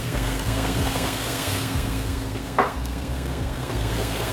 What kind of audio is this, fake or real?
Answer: fake